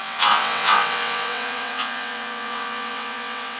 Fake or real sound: fake